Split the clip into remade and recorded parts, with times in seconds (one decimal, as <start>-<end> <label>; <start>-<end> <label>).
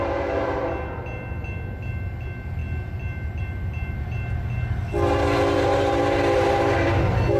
0.0-7.4 recorded